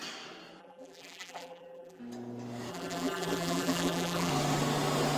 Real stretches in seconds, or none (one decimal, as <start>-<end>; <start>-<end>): 0.0-0.6; 2.0-2.7; 4.3-5.2